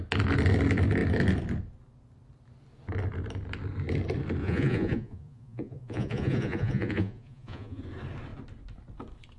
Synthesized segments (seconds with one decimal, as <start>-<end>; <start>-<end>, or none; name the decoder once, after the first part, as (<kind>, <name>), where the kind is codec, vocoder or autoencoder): 4.4-7.8 (vocoder, Vocos)